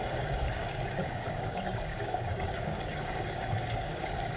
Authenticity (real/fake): fake